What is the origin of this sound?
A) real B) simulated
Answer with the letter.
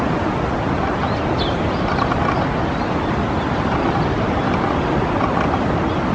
A